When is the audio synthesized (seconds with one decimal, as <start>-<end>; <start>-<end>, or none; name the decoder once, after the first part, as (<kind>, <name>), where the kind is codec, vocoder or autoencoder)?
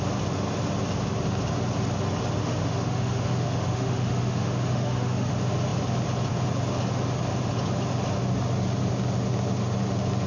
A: 2.4-5.3 (autoencoder, DAC-VAE)